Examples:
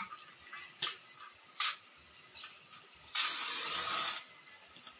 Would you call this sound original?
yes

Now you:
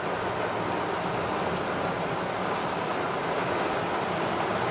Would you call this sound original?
yes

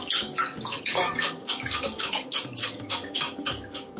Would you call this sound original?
no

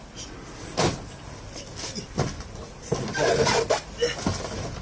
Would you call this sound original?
yes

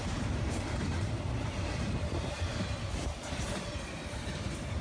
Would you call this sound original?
yes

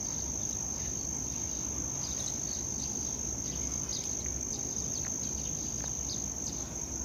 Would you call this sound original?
yes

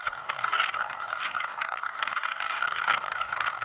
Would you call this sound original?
no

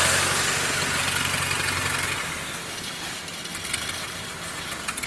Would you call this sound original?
yes